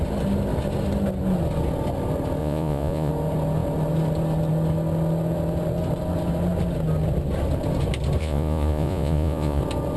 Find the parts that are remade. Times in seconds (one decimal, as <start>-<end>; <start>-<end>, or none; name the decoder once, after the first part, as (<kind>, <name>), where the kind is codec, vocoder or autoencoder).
2.4-3.1 (vocoder, Vocos); 8.2-9.6